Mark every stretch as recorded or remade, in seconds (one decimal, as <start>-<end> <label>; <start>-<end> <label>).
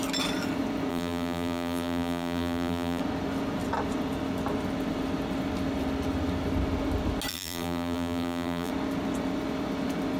0.0-0.9 recorded; 0.9-3.0 remade; 3.0-7.3 recorded; 7.3-8.7 remade; 8.7-10.2 recorded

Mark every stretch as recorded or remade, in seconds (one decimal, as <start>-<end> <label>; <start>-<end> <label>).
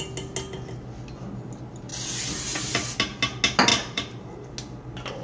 0.0-3.7 recorded; 3.7-4.5 remade; 4.5-5.2 recorded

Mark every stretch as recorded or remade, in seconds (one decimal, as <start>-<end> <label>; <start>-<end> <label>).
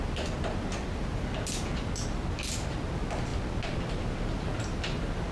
0.0-5.3 recorded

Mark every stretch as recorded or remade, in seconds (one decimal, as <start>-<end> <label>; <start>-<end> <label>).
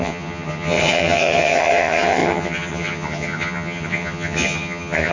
0.0-5.1 remade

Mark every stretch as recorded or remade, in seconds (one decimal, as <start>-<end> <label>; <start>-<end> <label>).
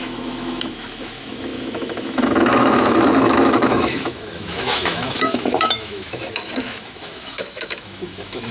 0.0-8.5 remade